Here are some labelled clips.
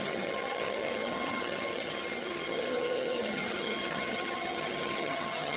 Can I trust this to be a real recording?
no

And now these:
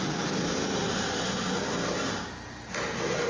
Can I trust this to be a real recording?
yes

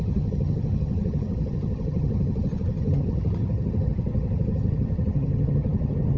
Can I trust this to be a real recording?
no